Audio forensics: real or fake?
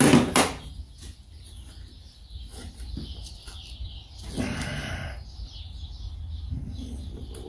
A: real